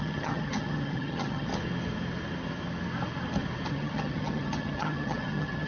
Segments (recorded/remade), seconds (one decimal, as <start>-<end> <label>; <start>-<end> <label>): 0.0-1.5 remade; 1.5-3.7 recorded; 3.7-5.7 remade